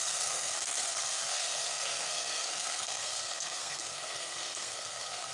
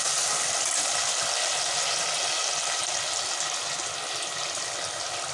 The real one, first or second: second